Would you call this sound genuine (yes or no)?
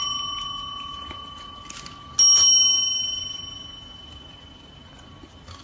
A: yes